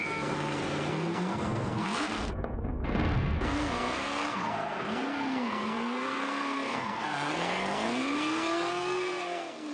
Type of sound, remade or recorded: remade